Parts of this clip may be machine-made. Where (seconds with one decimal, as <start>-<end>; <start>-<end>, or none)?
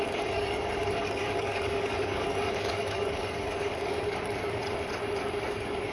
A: 0.0-4.6; 5.5-5.9